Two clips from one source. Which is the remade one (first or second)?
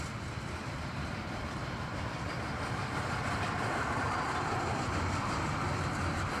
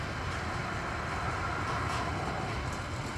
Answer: first